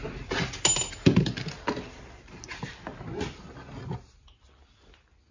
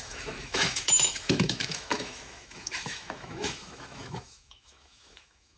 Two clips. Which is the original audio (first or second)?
first